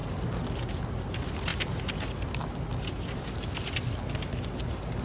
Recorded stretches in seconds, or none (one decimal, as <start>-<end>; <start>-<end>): 0.0-5.0